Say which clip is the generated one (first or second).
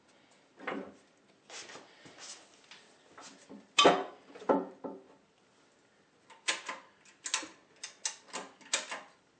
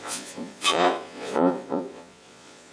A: second